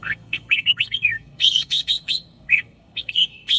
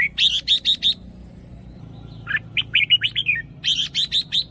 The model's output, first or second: first